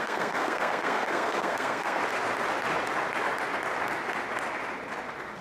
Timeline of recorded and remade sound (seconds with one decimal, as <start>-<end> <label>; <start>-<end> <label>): 0.0-2.0 remade; 2.0-5.4 recorded